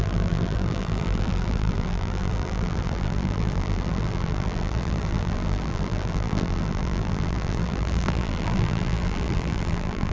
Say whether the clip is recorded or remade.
remade